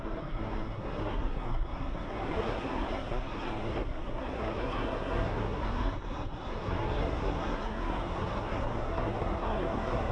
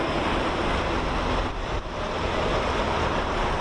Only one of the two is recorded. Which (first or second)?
second